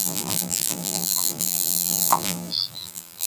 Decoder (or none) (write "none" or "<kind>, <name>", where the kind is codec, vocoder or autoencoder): vocoder, BigVGAN v2